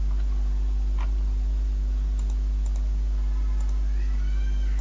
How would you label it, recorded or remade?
recorded